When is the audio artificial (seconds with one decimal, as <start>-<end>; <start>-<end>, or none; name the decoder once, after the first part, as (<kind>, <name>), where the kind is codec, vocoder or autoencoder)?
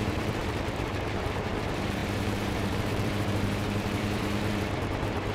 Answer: 0.0-5.3 (vocoder, BigVGAN v2)